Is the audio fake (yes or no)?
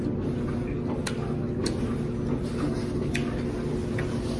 no